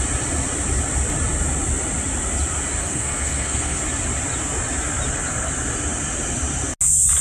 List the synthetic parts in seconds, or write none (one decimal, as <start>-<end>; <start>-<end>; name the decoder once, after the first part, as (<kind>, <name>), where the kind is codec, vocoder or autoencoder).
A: 2.8-3.8 (codec, SNAC)